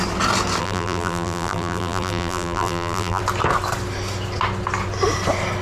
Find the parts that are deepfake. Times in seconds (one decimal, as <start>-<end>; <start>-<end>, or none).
0.6-3.2